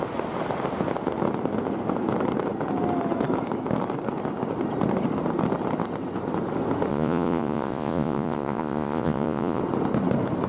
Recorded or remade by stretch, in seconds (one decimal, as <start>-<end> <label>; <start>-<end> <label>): 0.0-6.9 recorded; 6.9-9.6 remade; 9.6-10.5 recorded